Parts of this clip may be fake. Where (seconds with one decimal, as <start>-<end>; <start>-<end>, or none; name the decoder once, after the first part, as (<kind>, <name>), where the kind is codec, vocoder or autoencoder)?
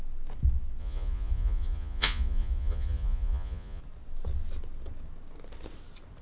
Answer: 0.8-3.8 (vocoder, Vocos)